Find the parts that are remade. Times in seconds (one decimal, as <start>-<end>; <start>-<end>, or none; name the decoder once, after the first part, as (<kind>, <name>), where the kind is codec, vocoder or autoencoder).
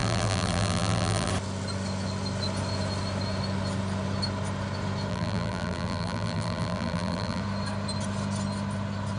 0.0-1.3 (vocoder, BigVGAN v2); 5.1-7.4